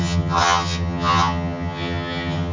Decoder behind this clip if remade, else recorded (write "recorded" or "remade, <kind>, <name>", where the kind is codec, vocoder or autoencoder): remade, vocoder, HiFi-GAN